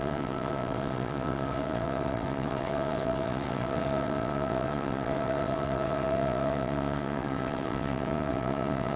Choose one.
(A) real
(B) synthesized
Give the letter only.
B